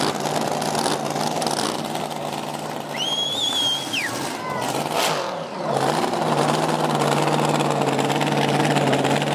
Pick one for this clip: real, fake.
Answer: real